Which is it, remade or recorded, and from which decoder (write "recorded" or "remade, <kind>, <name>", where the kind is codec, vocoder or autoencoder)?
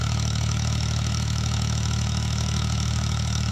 remade, autoencoder, DAC-VAE